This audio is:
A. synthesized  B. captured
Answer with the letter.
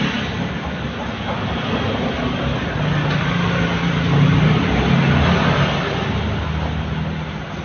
B